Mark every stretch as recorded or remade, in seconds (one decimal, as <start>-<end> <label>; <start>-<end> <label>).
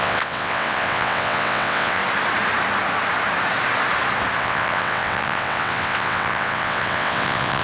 0.0-2.0 remade; 2.0-4.4 recorded; 4.4-7.6 remade